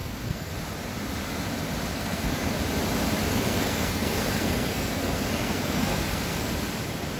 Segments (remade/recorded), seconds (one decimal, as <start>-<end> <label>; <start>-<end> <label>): 0.0-0.5 remade; 0.5-1.9 recorded; 1.9-2.6 remade; 2.6-3.3 recorded; 3.3-6.5 remade; 6.5-7.2 recorded